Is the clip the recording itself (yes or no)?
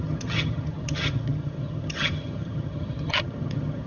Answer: no